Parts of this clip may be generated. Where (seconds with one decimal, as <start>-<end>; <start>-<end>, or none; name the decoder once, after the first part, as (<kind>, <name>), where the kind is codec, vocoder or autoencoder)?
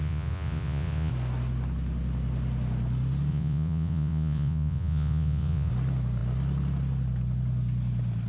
0.0-1.1 (vocoder, Vocos); 3.3-5.7